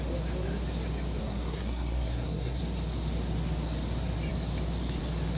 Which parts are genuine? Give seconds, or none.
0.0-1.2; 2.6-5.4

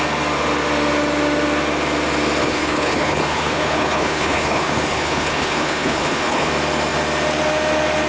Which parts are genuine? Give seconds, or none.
0.0-2.4; 6.5-8.1

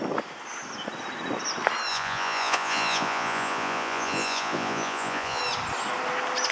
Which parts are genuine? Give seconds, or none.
0.0-1.9; 5.4-6.5

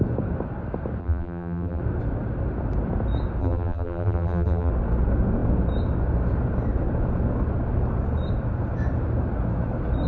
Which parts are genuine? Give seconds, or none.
0.0-1.0; 1.8-3.4; 4.7-10.1

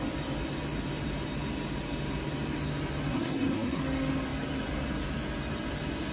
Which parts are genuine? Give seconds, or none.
0.0-3.1; 3.8-6.1

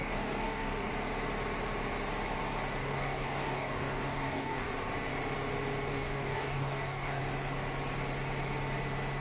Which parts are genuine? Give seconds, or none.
0.9-2.8; 4.7-5.9; 7.2-9.2

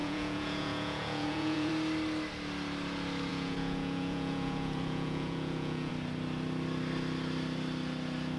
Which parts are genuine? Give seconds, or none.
1.7-3.3; 5.9-8.4

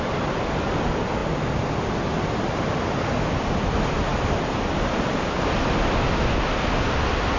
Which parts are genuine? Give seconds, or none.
0.0-7.4